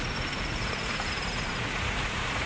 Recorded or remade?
remade